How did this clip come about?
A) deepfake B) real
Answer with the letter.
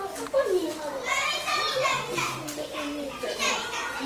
B